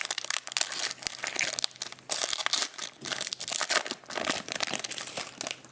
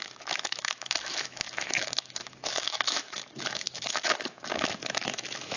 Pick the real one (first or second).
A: first